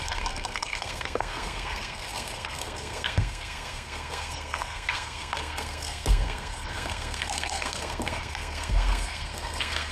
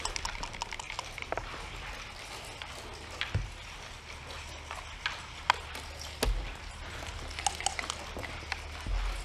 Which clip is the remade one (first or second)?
first